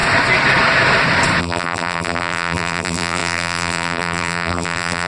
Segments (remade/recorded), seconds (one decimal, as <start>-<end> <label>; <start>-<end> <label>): 0.0-1.4 recorded; 1.4-5.1 remade